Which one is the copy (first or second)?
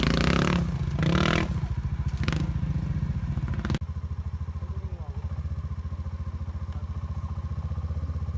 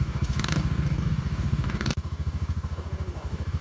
second